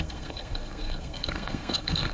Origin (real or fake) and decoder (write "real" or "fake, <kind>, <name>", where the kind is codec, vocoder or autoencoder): fake, codec, SNAC